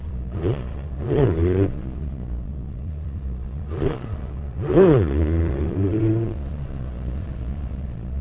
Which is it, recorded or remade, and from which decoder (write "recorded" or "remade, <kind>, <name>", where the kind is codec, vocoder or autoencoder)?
remade, vocoder, Vocos